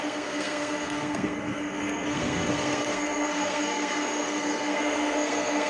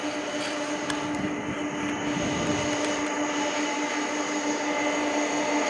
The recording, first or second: second